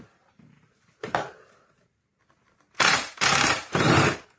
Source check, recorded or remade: remade